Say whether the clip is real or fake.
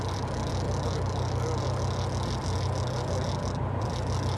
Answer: real